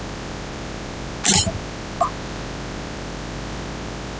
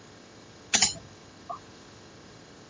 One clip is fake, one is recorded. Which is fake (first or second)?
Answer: second